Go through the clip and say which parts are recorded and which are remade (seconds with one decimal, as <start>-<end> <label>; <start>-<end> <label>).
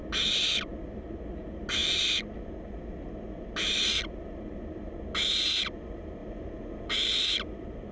0.0-7.9 recorded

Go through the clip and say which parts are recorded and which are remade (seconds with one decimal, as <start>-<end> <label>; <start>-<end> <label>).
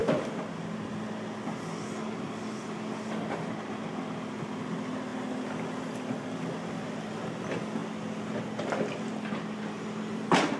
0.0-10.6 recorded